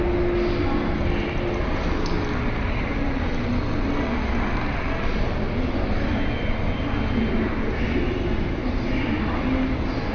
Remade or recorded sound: recorded